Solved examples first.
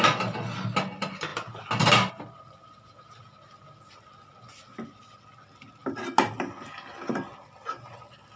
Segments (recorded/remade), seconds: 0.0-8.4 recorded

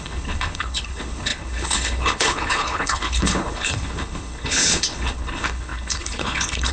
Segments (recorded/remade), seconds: 0.0-6.7 remade

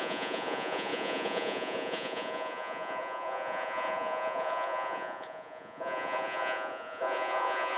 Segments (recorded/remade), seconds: 0.0-7.8 remade

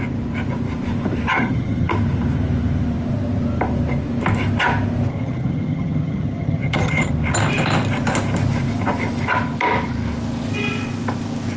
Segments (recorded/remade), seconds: 0.0-1.3 recorded; 1.3-1.9 remade; 1.9-5.1 recorded; 5.1-7.1 remade; 7.1-11.6 recorded